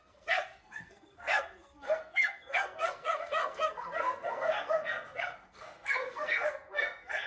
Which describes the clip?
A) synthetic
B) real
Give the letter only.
A